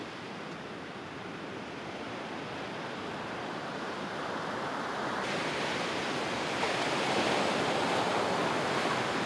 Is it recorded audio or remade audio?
remade